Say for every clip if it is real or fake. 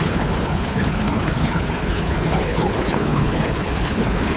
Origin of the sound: fake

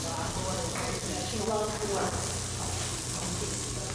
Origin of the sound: real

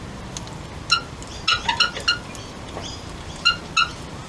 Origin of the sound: real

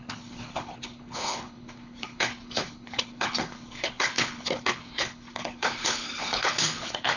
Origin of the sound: fake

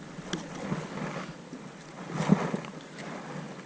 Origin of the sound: real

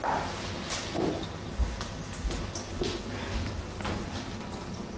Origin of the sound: real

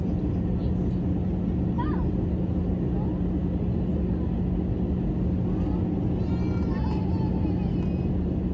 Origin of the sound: real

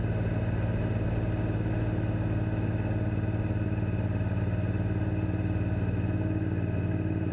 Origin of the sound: real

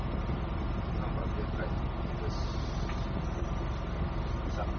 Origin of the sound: real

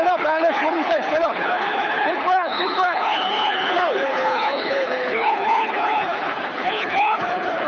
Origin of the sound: fake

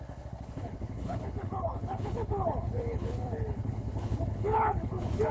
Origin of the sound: fake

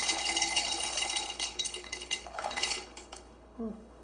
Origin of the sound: fake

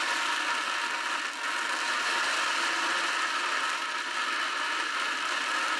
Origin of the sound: real